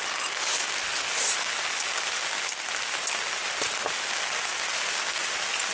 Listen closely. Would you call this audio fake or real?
real